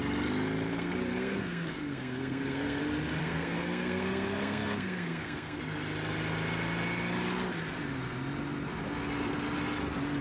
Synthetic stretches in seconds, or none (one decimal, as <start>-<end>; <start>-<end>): 0.7-2.8; 3.2-5.6